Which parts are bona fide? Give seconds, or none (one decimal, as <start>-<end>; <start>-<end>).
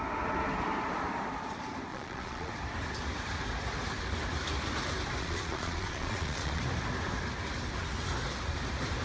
0.0-1.9; 2.5-5.2; 6.6-9.0